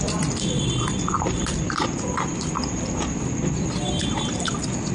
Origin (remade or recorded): recorded